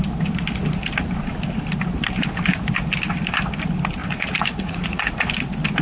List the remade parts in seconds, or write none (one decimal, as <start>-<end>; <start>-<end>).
4.0-5.1